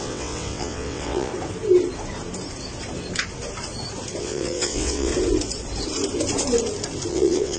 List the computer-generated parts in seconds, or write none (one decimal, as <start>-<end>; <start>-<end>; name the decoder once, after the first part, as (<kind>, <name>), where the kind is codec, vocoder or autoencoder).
0.0-1.3 (vocoder, WaveNeXt); 4.2-5.1; 7.1-7.6